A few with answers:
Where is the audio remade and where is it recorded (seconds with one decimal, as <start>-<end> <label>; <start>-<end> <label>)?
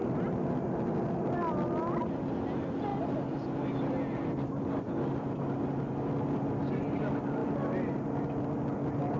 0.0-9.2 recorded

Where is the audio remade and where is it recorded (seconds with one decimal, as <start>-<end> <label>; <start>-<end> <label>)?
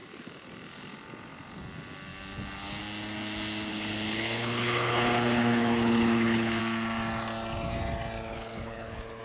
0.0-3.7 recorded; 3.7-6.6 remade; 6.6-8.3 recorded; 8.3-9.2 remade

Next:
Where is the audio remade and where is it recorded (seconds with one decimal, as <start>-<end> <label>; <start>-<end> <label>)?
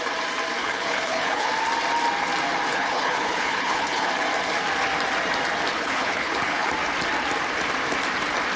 0.0-0.6 recorded; 0.6-1.5 remade; 1.5-2.7 recorded; 2.7-4.1 remade; 4.1-5.7 recorded; 5.7-6.7 remade; 6.7-8.6 recorded